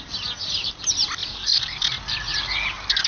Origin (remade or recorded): recorded